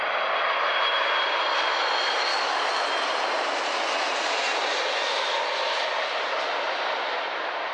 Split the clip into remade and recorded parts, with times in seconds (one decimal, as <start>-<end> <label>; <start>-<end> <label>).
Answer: 0.0-2.3 recorded; 2.3-2.8 remade; 2.8-7.7 recorded